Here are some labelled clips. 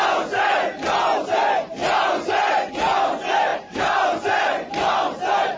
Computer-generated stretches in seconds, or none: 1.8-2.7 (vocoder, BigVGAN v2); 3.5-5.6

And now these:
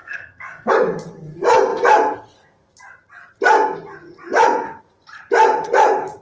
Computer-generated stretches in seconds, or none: 0.0-0.7 (codec, SNAC)

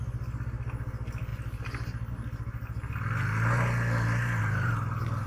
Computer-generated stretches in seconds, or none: none

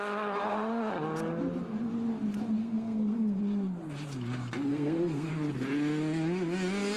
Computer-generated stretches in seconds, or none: 2.6-3.4 (codec, SNAC); 4.7-5.3

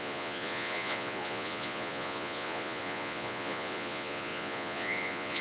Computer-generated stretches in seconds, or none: 0.0-5.4 (vocoder, Vocos)

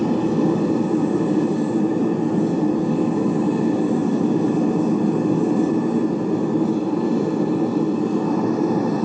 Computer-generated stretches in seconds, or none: none

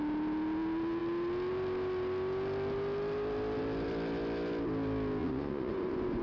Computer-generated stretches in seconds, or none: 5.2-6.2 (vocoder, Vocos)

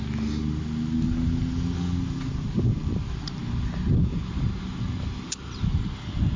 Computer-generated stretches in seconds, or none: 2.3-3.4 (vocoder, BigVGAN v2); 4.1-5.8